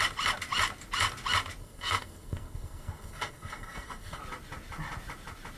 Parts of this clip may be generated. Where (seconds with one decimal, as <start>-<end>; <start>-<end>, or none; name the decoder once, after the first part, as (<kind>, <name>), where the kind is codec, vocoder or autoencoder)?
1.6-4.2 (codec, SNAC)